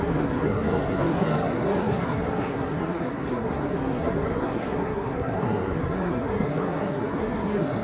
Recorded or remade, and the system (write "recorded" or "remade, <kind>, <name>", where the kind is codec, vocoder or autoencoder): remade, codec, SNAC